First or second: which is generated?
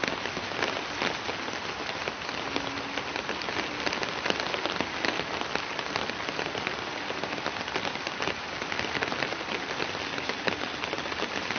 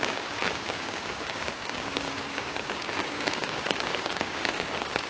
second